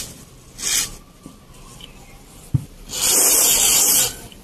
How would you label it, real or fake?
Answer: real